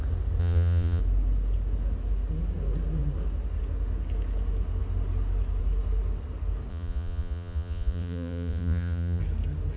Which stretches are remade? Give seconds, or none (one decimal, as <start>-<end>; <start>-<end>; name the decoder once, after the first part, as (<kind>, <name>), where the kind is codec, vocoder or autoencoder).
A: 0.4-1.0 (vocoder, Vocos); 6.7-9.2

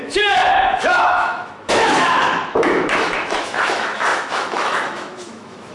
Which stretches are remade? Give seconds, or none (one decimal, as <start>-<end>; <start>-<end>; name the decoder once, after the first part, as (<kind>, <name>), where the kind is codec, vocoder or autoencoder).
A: 0.0-5.7 (autoencoder, DAC-VAE)

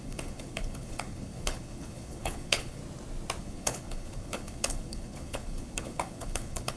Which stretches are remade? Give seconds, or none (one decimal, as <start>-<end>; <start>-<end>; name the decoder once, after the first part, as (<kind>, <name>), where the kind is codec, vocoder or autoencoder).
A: 0.0-2.8 (codec, HILCodec); 3.4-6.8

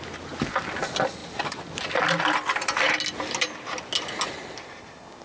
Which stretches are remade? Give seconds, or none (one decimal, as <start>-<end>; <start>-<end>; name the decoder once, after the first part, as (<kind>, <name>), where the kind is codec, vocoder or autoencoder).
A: none

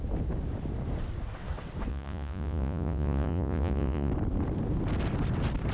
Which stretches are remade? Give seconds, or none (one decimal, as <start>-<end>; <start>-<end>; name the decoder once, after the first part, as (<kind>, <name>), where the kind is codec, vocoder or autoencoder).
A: 1.9-4.1 (vocoder, Vocos)